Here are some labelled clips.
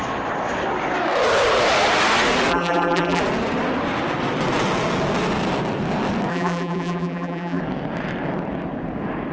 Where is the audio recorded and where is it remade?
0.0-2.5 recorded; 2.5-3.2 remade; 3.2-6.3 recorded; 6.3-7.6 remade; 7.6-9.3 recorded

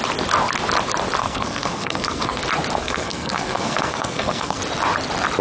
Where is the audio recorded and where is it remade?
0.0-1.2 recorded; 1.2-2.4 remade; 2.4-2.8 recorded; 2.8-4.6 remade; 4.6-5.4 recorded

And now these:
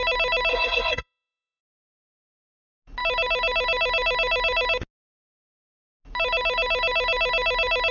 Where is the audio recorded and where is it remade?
0.0-0.5 recorded; 0.5-1.6 remade; 1.6-7.9 recorded

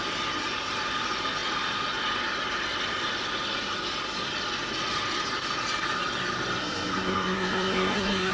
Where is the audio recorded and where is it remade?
0.0-6.6 recorded; 6.6-8.3 remade

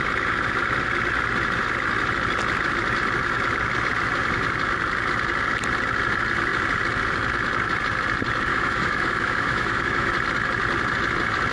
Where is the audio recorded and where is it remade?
0.0-8.5 recorded; 8.5-10.1 remade; 10.1-11.5 recorded